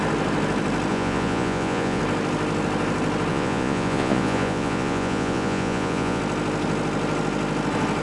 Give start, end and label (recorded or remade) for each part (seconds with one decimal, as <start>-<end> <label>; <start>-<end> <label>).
0.0-0.9 recorded; 0.9-2.0 remade; 2.0-3.3 recorded; 3.3-6.2 remade; 6.2-8.0 recorded